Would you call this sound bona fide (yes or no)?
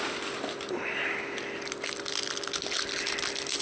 yes